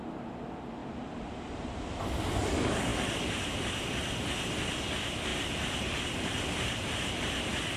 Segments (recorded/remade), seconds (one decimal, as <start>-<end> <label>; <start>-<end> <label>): 0.0-0.8 recorded; 0.8-2.0 remade; 2.0-5.3 recorded; 5.3-7.8 remade